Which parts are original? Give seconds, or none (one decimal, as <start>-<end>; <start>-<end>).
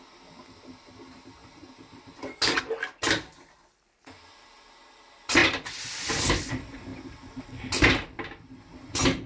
0.0-9.3